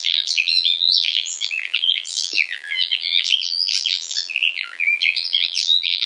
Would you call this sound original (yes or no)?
no